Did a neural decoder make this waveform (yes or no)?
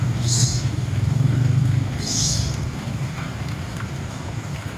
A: yes